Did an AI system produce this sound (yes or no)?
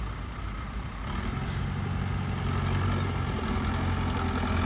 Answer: no